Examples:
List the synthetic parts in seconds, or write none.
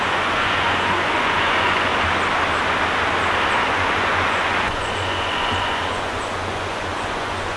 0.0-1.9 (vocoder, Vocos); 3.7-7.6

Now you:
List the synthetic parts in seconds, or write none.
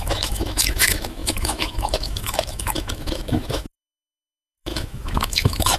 0.0-5.8 (autoencoder, DAC-VAE)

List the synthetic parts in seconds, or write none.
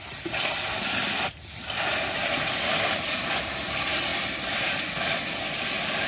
none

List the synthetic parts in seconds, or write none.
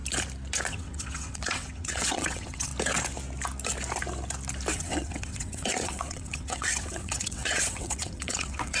0.7-2.7 (vocoder, WaveNeXt); 4.7-8.8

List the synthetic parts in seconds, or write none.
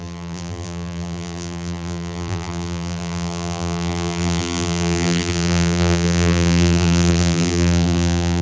0.0-8.4 (vocoder, BigVGAN v2)